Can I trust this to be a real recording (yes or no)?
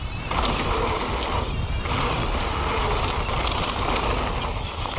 yes